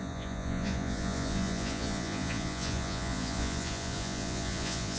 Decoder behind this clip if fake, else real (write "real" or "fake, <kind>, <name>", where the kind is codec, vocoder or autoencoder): fake, vocoder, Vocos